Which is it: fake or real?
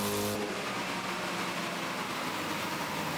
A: real